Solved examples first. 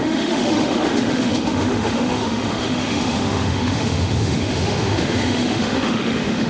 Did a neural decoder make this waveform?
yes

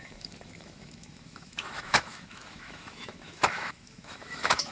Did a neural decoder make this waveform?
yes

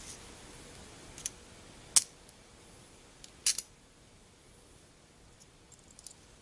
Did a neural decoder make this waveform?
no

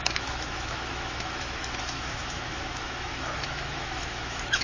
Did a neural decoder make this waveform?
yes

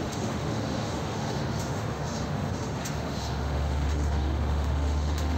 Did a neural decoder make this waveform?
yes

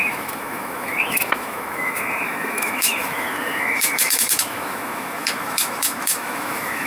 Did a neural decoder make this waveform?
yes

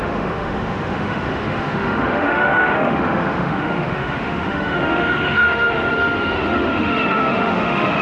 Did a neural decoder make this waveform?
yes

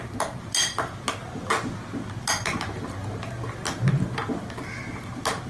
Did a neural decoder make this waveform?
no